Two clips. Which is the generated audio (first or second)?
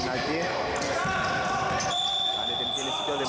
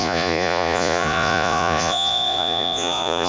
second